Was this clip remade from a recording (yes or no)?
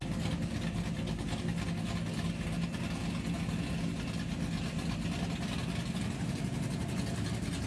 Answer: no